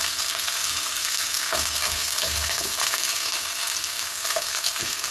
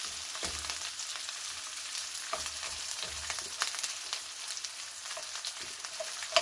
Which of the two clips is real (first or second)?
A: second